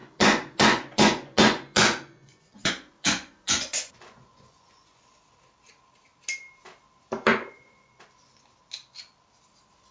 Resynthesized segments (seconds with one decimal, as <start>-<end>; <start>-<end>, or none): 0.0-5.0; 7.3-8.0